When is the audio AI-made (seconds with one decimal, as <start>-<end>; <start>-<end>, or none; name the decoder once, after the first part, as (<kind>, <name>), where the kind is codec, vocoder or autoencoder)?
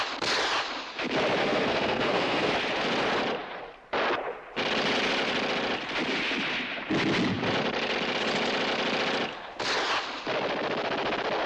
1.4-2.5 (codec, SNAC)